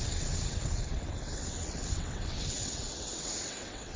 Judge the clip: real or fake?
fake